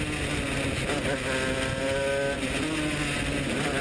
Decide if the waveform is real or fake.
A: real